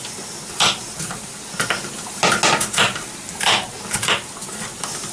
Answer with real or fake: real